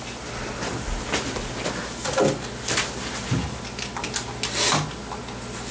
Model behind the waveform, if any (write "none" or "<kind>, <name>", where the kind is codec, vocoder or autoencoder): none